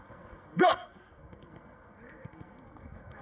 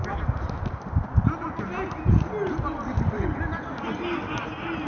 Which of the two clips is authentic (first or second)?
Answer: second